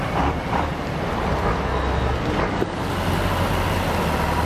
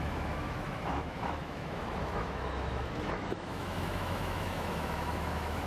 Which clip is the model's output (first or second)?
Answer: second